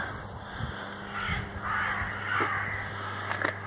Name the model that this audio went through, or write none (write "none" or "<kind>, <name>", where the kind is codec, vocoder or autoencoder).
none